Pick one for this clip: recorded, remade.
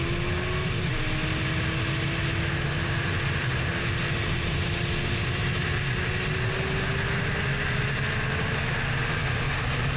recorded